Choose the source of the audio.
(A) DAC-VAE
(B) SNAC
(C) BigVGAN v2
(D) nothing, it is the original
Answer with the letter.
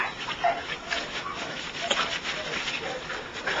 D